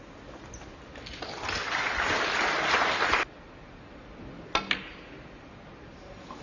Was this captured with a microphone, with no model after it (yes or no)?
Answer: yes